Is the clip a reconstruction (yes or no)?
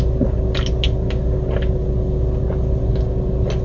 no